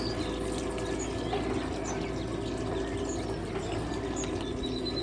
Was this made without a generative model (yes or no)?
yes